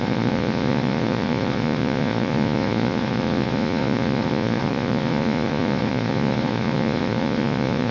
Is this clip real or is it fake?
fake